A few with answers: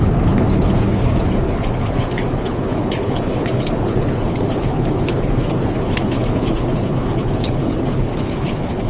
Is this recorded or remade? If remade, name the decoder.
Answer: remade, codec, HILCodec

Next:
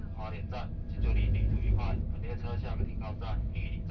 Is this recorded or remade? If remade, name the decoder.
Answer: recorded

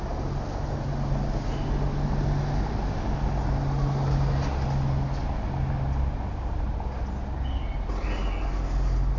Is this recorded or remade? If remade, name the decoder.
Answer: recorded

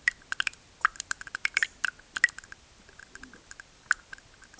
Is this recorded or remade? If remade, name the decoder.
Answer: recorded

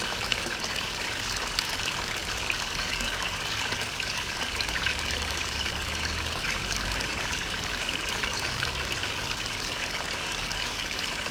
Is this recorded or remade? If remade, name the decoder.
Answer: remade, codec, DAC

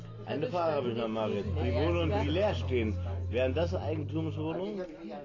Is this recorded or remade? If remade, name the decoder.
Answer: recorded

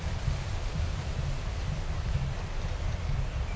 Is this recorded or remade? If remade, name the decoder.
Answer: recorded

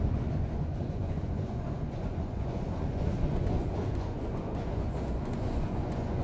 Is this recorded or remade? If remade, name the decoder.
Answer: remade, vocoder, Vocos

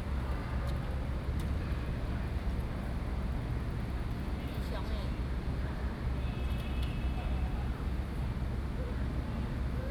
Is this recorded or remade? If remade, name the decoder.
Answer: recorded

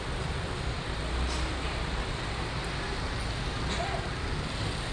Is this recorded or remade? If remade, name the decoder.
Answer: recorded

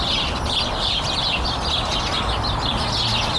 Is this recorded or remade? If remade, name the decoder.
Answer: recorded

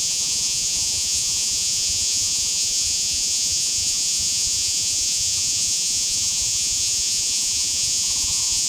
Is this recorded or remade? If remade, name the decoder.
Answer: remade, vocoder, Vocos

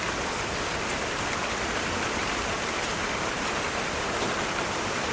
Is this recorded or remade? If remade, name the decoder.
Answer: remade, vocoder, BigVGAN v2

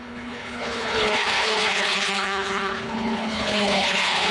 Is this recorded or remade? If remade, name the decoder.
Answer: remade, codec, HILCodec